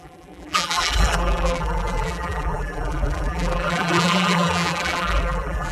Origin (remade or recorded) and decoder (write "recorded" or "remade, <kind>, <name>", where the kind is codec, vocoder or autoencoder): remade, vocoder, BigVGAN v2